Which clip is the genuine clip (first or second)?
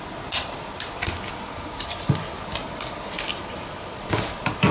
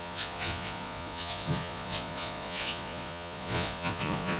first